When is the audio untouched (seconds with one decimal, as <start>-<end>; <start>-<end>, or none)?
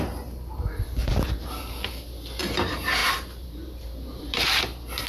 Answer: 1.0-2.4